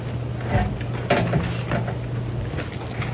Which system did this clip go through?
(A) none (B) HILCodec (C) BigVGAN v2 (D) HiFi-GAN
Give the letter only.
A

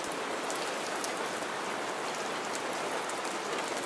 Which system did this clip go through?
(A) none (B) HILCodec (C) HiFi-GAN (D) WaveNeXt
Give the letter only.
A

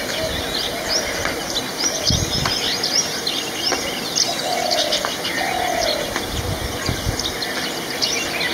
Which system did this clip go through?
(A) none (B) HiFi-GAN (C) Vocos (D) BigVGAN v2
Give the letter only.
A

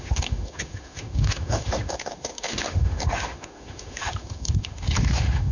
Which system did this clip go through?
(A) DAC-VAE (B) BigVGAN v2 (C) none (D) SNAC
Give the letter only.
A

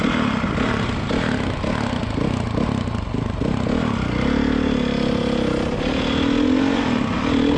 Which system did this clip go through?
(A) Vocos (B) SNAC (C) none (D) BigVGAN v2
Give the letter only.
C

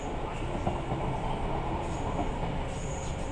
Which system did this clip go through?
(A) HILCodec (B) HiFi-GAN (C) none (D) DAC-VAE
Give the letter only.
C